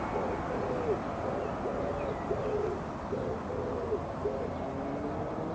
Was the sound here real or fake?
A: real